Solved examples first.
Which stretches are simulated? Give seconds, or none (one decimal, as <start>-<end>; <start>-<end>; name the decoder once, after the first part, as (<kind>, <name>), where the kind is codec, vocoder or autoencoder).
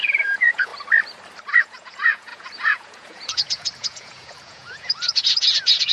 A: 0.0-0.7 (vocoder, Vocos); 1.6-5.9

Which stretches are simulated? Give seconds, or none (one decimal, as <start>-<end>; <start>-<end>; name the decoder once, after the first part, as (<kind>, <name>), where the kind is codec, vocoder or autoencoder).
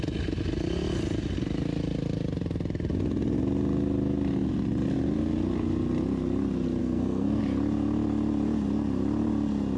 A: 6.8-7.4 (codec, SNAC)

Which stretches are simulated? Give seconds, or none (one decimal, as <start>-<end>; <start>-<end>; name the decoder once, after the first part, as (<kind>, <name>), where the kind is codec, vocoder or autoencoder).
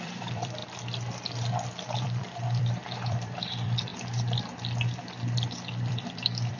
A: 0.0-0.6 (vocoder, BigVGAN v2); 2.0-3.9; 5.8-6.6